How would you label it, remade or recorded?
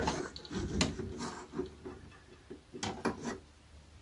recorded